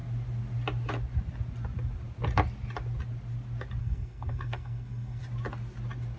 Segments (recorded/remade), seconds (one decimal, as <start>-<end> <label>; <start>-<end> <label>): 0.0-3.8 recorded; 3.8-5.2 remade; 5.2-6.2 recorded